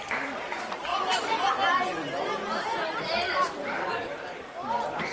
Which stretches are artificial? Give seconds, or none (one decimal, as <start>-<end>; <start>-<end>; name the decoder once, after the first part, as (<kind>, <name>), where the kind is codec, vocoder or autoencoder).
0.9-1.5 (vocoder, Vocos)